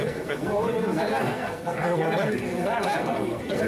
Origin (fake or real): fake